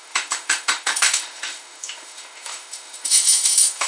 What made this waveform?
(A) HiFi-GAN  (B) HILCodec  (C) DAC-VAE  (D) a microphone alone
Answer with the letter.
C